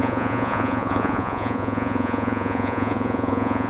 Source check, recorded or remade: remade